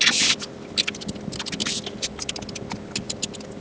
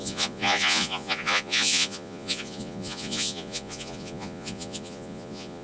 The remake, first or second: second